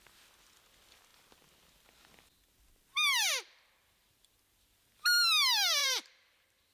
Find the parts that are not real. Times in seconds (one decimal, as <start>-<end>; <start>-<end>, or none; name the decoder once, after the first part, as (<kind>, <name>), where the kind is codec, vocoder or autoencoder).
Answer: 5.8-6.7 (vocoder, BigVGAN v2)